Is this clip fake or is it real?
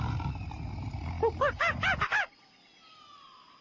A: real